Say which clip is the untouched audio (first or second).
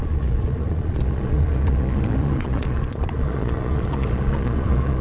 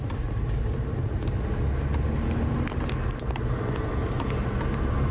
second